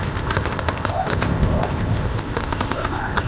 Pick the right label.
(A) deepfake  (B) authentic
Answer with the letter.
A